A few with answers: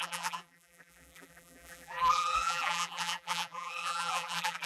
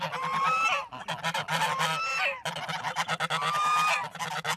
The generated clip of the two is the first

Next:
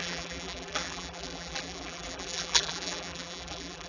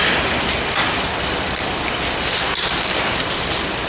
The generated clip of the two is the first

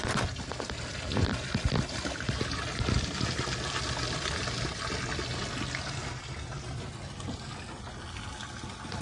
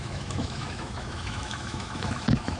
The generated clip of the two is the second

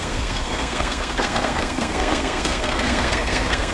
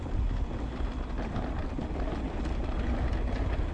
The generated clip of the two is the first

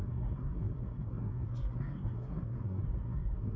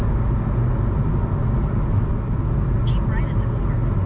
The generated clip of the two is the first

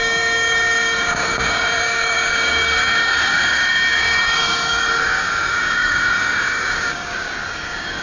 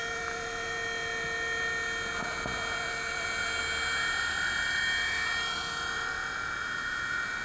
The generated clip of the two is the first